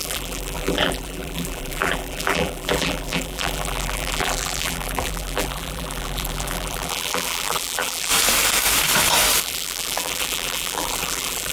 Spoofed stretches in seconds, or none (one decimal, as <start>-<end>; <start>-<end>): 0.0-8.1; 9.4-11.5